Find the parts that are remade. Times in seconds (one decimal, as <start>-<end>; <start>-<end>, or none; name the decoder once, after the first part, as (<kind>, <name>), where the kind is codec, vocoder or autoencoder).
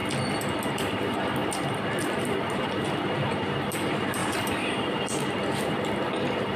0.7-6.6 (vocoder, BigVGAN v2)